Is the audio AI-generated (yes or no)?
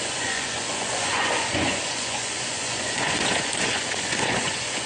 yes